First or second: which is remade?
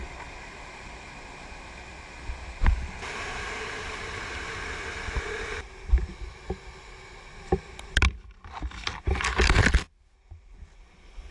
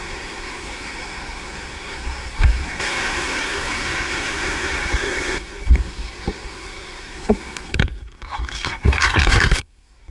second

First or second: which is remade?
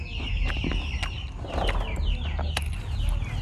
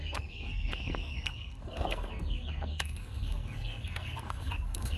second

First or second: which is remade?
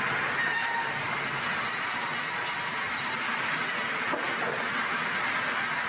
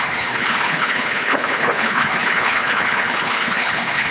second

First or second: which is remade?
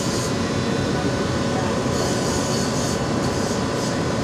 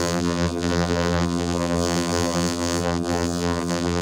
second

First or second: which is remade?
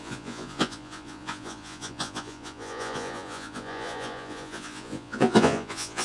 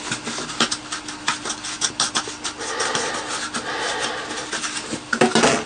first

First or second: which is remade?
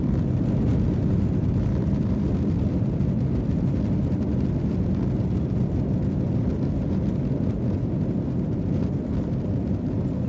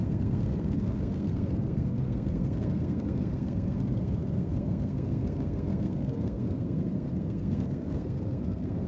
second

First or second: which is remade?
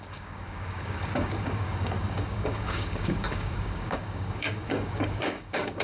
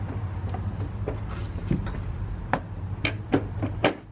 first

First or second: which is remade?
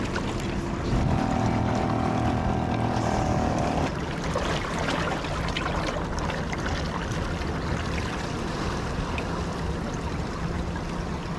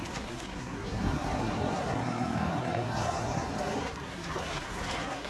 second